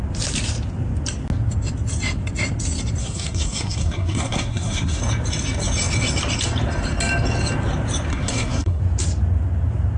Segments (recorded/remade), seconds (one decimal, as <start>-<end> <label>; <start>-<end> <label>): 0.0-3.0 recorded; 3.0-5.0 remade; 5.0-8.1 recorded; 8.1-8.8 remade; 8.8-10.0 recorded